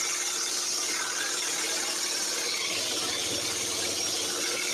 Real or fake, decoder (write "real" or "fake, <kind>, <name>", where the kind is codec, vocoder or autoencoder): real